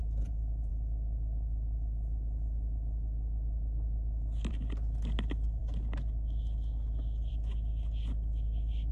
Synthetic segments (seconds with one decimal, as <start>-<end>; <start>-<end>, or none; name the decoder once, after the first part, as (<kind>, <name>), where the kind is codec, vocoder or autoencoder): none